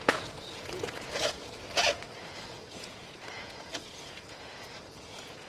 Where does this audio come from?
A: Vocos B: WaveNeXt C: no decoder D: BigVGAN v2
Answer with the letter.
A